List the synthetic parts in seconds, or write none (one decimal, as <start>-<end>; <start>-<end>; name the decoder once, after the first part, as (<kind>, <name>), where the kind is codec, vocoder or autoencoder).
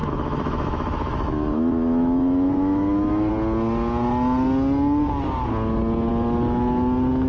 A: 0.0-3.3 (autoencoder, DAC-VAE)